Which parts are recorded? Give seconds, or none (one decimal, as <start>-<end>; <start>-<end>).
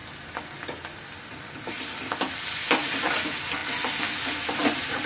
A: 0.0-5.1